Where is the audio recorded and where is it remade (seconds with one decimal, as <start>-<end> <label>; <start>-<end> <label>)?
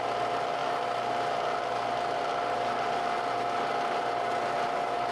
0.0-5.1 recorded